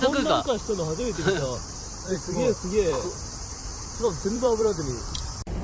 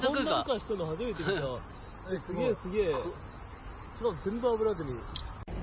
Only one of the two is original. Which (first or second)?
second